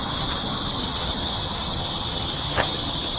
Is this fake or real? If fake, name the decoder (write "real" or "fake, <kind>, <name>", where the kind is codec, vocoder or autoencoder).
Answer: fake, vocoder, HiFi-GAN